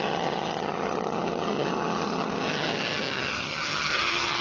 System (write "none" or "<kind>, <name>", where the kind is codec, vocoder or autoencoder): vocoder, HiFi-GAN